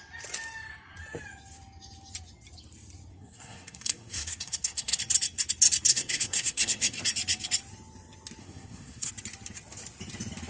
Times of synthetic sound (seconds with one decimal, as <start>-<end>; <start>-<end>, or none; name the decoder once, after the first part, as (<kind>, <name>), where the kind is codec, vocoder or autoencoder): 3.1-5.0 (codec, SNAC); 5.9-6.9; 8.4-9.1